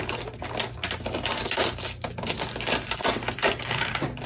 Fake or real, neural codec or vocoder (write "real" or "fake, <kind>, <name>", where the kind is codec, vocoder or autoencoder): real